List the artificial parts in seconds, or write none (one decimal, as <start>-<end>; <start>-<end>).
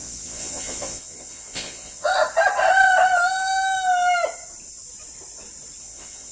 0.0-2.1; 5.8-6.3